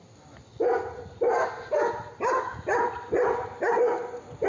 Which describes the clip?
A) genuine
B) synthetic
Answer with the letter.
A